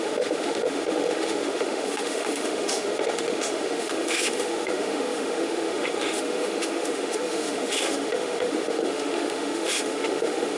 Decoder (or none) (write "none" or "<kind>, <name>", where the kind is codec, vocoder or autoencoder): autoencoder, DAC-VAE